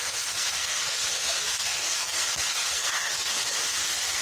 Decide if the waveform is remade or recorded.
remade